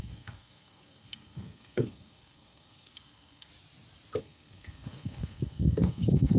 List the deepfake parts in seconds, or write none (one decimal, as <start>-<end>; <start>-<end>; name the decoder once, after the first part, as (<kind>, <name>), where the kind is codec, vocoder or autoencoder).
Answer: 0.0-3.5 (codec, SNAC); 4.2-6.4